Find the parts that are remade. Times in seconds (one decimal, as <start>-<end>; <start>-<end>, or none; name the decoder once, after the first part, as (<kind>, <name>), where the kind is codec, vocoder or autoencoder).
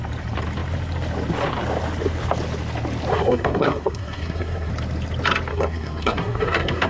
3.1-4.7 (codec, SNAC); 5.5-6.9